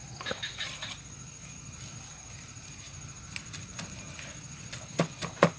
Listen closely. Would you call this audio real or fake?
real